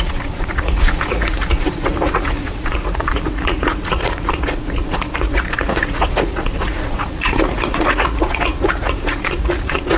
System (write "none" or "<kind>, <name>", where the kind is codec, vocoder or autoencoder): vocoder, Vocos